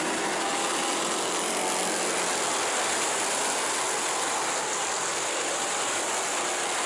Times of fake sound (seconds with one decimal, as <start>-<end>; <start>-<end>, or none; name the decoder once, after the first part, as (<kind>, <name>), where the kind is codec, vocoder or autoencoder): none